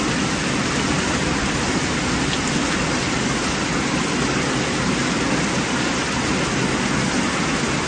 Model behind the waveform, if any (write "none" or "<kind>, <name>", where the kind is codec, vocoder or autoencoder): none